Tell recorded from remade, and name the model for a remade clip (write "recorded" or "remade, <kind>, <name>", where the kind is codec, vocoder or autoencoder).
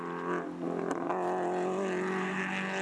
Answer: recorded